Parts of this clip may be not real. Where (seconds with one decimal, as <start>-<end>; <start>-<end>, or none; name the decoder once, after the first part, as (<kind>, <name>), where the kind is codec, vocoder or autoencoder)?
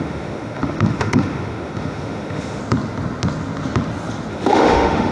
0.0-2.6 (autoencoder, DAC-VAE); 4.3-5.1